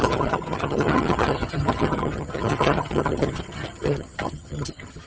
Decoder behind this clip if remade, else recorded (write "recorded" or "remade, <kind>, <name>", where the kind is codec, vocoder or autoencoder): remade, vocoder, HiFi-GAN